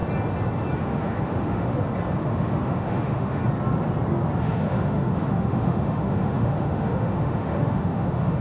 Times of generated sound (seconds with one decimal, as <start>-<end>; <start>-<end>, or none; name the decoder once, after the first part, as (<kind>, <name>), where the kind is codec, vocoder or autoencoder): 0.8-1.7 (autoencoder, DAC-VAE); 2.2-3.4; 4.4-8.4